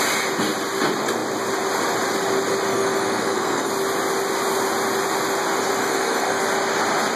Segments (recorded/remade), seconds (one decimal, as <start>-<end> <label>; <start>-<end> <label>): 0.0-2.7 recorded; 2.7-3.7 remade; 3.7-5.8 recorded; 5.8-6.4 remade; 6.4-7.2 recorded